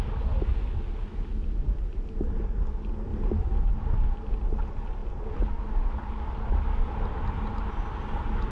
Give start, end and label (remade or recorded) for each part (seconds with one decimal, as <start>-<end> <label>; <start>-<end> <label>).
0.0-3.1 recorded; 3.1-3.6 remade; 3.6-8.5 recorded